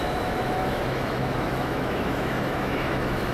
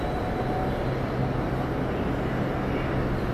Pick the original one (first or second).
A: second